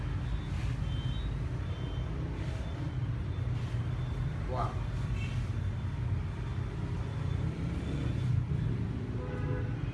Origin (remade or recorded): recorded